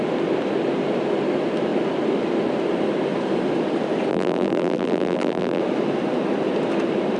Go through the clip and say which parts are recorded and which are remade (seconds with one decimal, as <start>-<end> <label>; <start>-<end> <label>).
0.0-4.1 recorded; 4.1-5.6 remade; 5.6-7.2 recorded

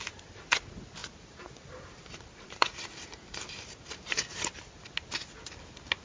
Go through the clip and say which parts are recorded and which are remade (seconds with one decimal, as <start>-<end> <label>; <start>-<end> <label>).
0.0-1.0 recorded; 1.0-4.6 remade; 4.6-6.0 recorded